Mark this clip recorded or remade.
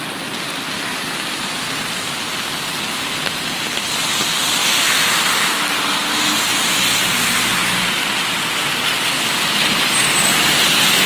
recorded